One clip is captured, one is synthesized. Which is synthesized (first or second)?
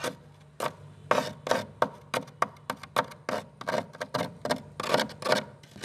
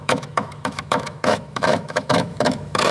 second